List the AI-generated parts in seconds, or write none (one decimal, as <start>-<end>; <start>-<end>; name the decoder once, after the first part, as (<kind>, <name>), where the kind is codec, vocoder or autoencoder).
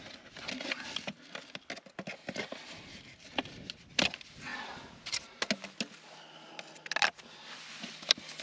none